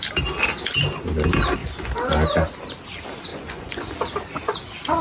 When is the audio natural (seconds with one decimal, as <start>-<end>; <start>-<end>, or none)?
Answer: 0.0-1.6; 2.1-3.3; 3.9-5.0